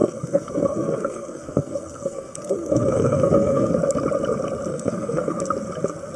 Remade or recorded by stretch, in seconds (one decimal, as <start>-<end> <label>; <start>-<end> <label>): 0.0-3.7 remade; 3.7-4.7 recorded; 4.7-5.4 remade; 5.4-6.2 recorded